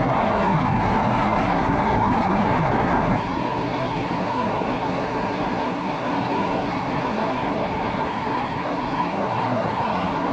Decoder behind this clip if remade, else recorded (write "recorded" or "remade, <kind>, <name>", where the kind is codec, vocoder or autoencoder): remade, codec, SNAC